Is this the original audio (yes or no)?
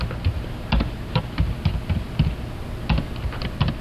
yes